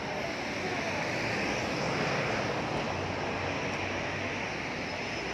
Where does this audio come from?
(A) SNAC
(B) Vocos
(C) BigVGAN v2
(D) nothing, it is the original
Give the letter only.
D